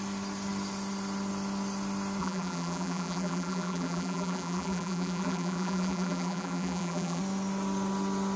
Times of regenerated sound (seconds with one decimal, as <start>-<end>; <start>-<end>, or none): 2.2-7.2